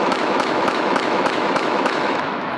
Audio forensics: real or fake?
fake